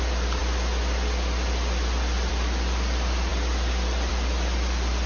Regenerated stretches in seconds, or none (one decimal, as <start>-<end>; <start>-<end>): none